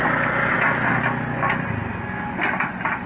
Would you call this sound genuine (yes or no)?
yes